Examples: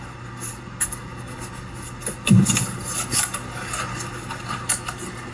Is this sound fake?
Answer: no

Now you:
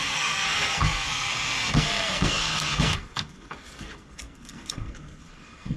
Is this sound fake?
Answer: yes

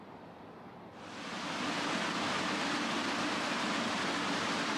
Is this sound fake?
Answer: no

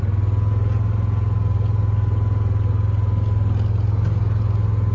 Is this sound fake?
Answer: no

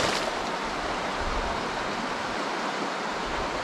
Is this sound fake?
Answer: no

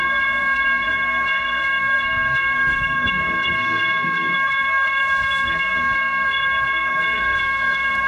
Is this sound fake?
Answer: yes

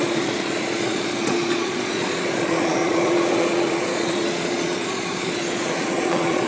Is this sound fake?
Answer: yes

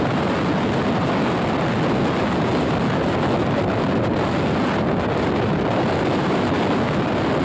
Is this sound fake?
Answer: no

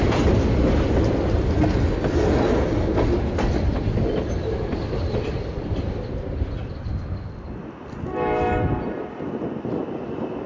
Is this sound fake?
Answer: no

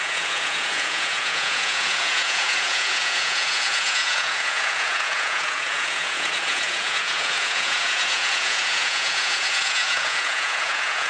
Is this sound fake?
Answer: yes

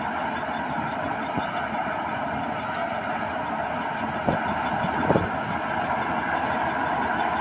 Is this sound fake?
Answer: no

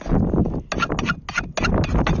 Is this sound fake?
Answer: no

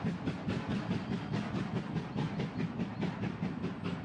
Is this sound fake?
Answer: no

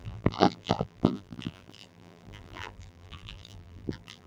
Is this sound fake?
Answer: yes